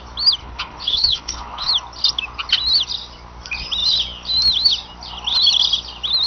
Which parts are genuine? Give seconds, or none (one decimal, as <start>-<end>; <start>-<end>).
0.0-0.4; 1.7-6.3